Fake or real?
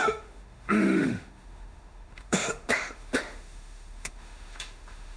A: fake